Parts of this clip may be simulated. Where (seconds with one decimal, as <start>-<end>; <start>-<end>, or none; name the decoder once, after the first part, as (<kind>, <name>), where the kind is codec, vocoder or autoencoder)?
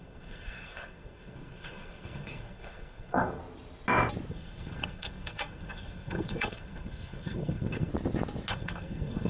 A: 0.0-3.4 (codec, SNAC); 4.3-7.9; 8.5-9.3